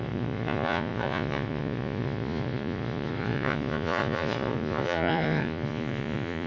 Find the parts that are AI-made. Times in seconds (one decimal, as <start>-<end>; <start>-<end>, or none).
0.0-6.5